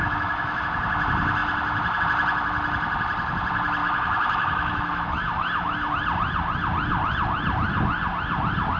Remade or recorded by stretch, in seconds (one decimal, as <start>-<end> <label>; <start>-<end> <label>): 0.0-0.6 remade; 0.6-3.8 recorded; 3.8-5.9 remade; 5.9-8.8 recorded